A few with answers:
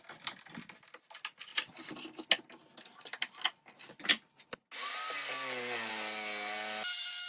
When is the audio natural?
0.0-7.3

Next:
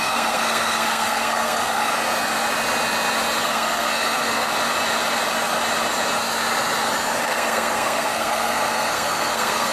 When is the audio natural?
1.9-3.4; 4.5-7.2